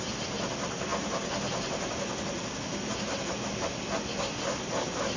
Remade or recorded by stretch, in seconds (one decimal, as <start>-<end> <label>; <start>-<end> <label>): 0.0-5.2 recorded